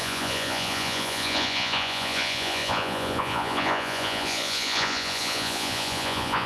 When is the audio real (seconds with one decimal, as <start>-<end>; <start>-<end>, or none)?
none